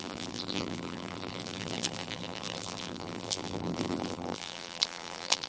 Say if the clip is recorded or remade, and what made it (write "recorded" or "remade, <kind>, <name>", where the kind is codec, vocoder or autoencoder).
remade, vocoder, BigVGAN v2